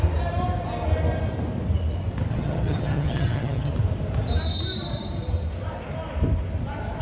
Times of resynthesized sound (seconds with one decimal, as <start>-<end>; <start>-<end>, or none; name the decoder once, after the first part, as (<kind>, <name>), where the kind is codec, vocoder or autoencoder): 2.3-3.7 (vocoder, HiFi-GAN)